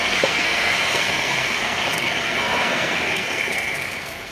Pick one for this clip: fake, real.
fake